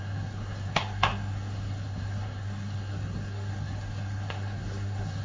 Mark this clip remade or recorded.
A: remade